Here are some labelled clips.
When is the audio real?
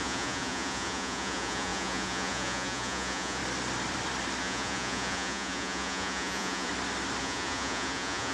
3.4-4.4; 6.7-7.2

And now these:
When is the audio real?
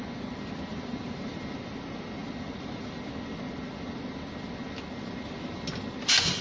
0.0-0.7; 1.7-2.2; 3.0-6.4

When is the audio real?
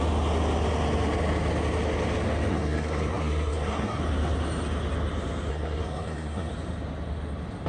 0.0-2.5; 4.0-5.5; 6.5-7.7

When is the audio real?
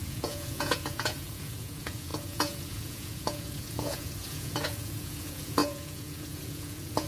none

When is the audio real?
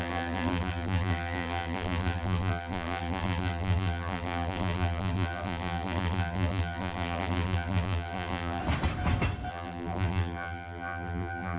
8.6-9.5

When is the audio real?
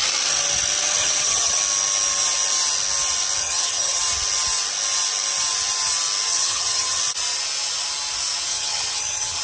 0.0-1.0; 1.6-3.4; 4.0-6.3; 7.0-8.5